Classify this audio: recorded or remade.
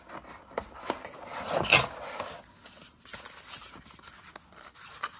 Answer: recorded